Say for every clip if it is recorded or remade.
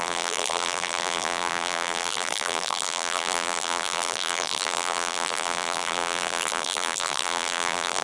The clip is remade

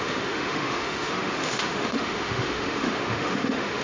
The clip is remade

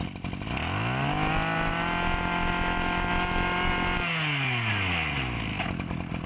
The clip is recorded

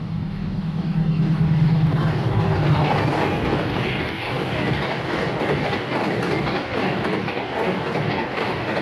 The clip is remade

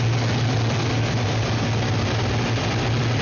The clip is recorded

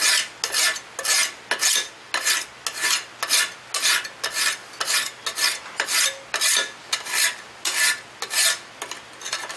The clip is recorded